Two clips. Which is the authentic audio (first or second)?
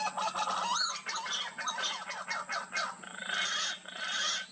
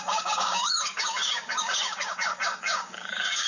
first